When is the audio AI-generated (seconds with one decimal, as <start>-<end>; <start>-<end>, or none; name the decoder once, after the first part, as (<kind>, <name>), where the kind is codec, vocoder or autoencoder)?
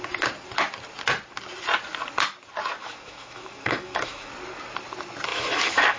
2.8-4.3 (autoencoder, DAC-VAE); 5.3-6.0